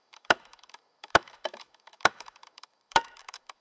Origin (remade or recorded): remade